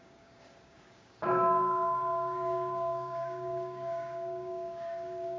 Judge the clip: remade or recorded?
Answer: remade